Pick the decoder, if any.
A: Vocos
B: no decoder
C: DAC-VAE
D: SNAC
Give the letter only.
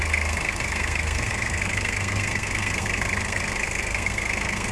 D